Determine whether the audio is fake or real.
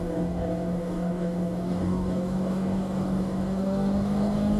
fake